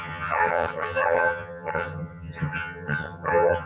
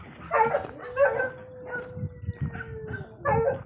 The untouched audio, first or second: second